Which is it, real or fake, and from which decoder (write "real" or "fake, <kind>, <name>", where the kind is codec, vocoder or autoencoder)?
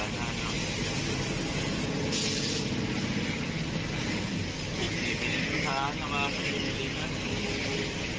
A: real